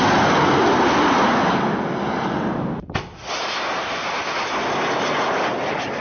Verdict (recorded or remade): recorded